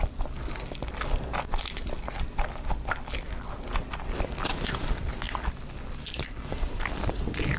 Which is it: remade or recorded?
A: recorded